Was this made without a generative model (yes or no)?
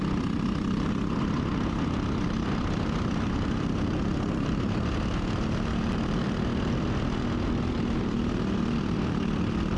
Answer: yes